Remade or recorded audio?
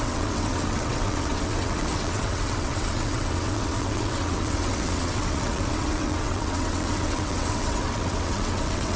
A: remade